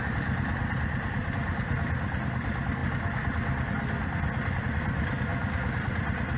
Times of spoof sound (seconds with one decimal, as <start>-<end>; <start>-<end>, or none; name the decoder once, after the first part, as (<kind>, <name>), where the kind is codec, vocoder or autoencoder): none